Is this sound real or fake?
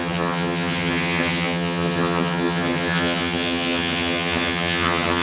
fake